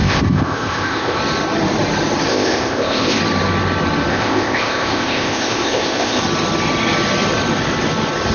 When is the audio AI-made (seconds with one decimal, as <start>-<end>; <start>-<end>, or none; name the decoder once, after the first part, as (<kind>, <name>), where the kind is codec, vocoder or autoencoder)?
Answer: 0.0-1.2 (codec, ZipCodec); 2.3-3.2; 4.1-6.2

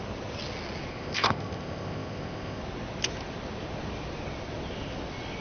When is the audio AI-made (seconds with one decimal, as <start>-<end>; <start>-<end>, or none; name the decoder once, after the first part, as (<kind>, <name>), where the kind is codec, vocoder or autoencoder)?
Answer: 0.9-2.6 (codec, ZipCodec)

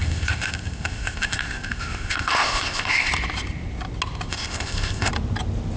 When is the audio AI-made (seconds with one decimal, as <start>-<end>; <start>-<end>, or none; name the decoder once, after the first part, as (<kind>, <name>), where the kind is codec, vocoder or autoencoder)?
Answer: 0.0-3.1 (codec, ZipCodec); 4.3-5.1

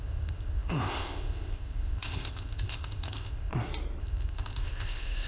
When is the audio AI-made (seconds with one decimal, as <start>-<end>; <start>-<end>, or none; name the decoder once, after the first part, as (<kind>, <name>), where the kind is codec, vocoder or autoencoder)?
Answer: 0.0-3.5 (codec, ZipCodec); 4.0-5.3

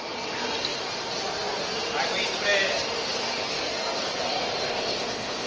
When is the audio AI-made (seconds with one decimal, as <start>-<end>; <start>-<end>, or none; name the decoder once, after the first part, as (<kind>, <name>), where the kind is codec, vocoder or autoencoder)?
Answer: 4.7-5.5 (codec, ZipCodec)

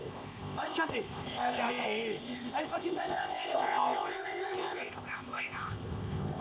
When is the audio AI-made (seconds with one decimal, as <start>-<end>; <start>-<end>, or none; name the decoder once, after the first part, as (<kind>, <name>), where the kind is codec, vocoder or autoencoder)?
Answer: 0.0-6.4 (codec, ZipCodec)

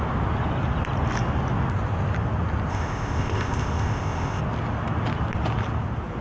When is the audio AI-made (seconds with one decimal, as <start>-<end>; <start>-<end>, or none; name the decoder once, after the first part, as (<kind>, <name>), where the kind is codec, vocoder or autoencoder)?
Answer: 2.7-4.4 (codec, ZipCodec)

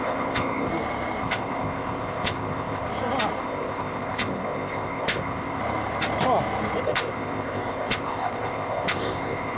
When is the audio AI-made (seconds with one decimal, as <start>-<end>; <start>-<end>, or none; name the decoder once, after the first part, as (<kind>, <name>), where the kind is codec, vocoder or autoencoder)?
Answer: 0.0-0.7 (codec, ZipCodec); 1.2-2.9; 3.4-5.6; 6.8-9.6